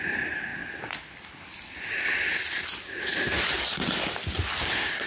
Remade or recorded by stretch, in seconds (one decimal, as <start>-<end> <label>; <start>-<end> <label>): 0.0-5.1 recorded